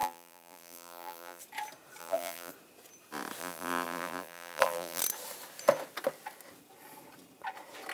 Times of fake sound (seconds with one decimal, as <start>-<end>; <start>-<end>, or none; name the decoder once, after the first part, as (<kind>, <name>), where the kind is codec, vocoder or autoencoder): 0.0-1.4 (vocoder, BigVGAN v2); 2.0-2.5; 3.4-5.0